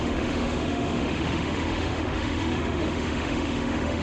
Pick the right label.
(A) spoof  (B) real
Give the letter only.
A